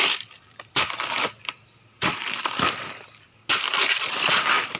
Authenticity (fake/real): real